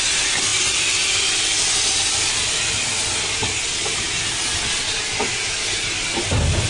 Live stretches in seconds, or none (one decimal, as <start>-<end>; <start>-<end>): 0.0-6.7